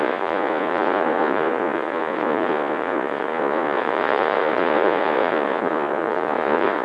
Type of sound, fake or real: fake